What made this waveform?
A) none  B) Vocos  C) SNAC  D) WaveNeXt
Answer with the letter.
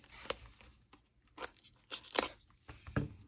A